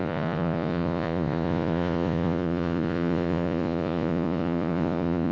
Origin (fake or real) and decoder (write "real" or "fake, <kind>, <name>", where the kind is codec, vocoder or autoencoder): fake, vocoder, Vocos